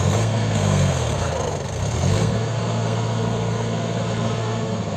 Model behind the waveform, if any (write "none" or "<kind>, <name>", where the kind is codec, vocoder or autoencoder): codec, SNAC